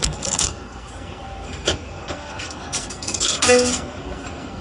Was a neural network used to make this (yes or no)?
yes